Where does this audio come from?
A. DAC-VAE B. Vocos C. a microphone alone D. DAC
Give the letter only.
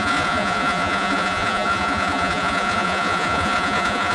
B